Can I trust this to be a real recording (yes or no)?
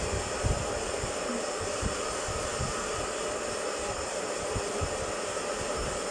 yes